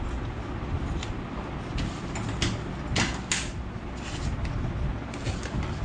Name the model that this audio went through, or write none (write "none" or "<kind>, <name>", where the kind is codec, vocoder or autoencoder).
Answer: none